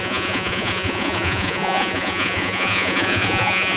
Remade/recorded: remade